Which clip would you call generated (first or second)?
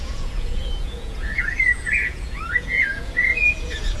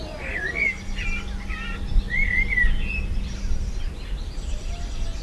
first